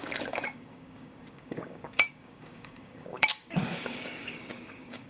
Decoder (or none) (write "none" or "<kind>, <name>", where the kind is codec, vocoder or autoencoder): codec, DAC